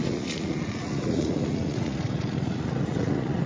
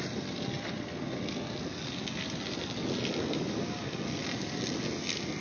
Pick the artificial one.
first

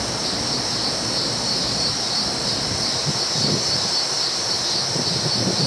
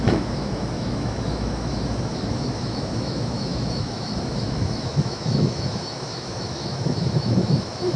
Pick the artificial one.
second